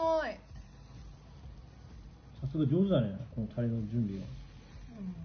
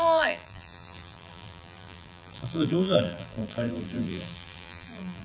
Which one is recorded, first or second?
first